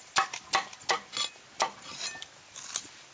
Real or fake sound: real